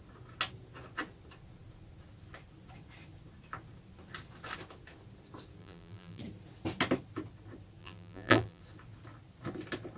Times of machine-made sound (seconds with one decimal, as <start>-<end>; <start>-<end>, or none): 5.6-6.2; 7.8-8.6

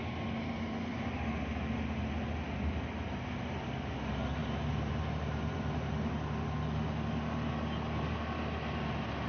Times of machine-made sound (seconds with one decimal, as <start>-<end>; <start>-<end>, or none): 4.4-6.1